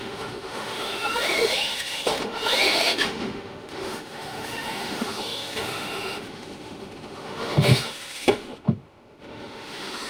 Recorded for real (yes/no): no